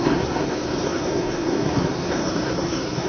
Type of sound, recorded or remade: remade